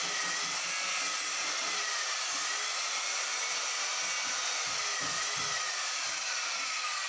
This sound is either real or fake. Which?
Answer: real